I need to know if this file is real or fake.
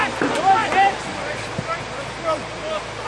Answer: real